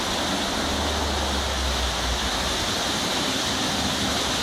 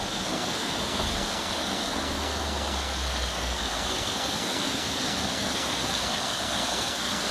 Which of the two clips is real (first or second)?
first